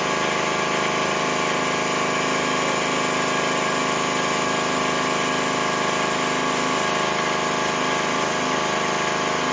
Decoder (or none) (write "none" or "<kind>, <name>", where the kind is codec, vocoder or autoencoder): none